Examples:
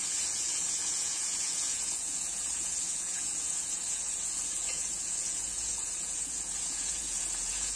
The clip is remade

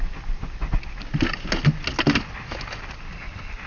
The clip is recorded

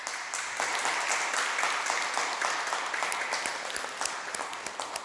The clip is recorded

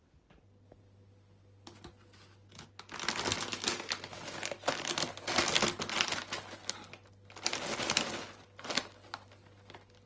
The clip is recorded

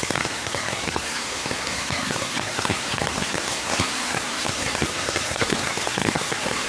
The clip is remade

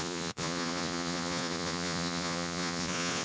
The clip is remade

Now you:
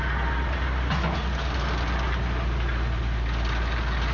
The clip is recorded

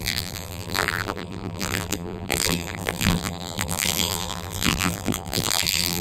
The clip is remade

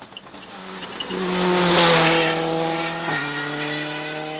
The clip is recorded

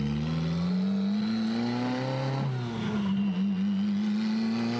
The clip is recorded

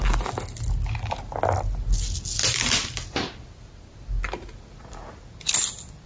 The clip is recorded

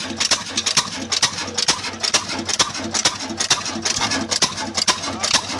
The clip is recorded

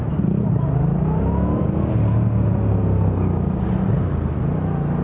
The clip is recorded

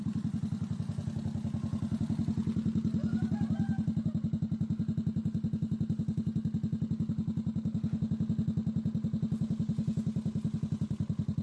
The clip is recorded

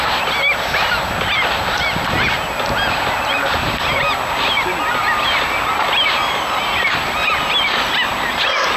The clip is recorded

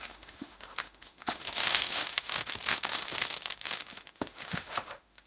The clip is remade